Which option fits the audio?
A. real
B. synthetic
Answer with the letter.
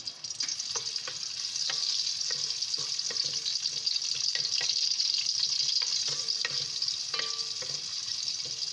A